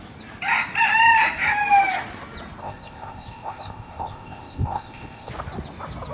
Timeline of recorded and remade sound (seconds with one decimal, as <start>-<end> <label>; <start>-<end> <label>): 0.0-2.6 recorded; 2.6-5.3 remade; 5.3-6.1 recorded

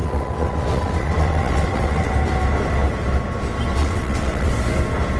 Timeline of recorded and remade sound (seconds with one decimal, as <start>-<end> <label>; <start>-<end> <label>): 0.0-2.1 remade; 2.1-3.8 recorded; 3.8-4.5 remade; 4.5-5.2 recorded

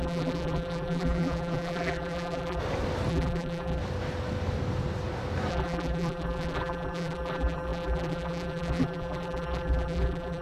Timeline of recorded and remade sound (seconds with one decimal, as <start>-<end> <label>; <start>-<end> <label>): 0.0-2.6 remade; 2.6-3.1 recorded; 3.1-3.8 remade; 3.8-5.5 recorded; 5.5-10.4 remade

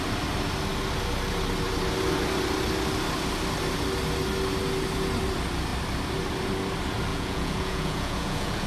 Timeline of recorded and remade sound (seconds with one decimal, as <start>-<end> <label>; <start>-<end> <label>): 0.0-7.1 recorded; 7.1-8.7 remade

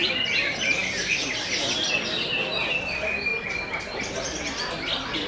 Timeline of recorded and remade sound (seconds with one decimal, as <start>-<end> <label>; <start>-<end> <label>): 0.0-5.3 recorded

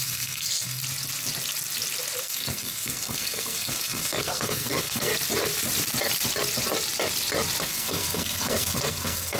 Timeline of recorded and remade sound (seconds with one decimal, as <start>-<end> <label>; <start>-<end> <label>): 0.0-0.8 remade; 0.8-2.2 recorded; 2.2-5.1 remade; 5.1-7.6 recorded; 7.6-9.4 remade